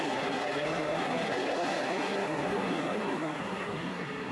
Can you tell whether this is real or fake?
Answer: fake